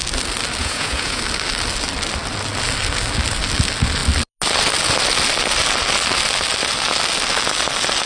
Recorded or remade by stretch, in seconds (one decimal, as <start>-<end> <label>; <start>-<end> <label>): 0.0-0.6 recorded; 0.6-1.2 remade; 1.2-8.1 recorded